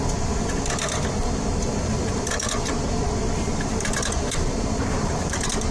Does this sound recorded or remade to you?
remade